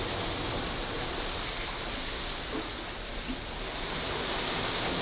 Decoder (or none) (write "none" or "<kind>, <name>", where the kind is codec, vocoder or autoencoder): none